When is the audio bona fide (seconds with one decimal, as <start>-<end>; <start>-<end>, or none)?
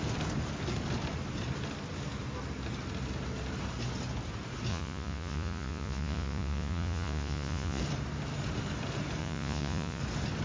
0.0-4.7; 7.8-9.2; 10.0-10.4